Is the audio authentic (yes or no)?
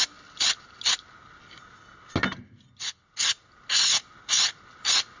yes